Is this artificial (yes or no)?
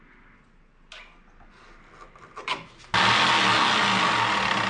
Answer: no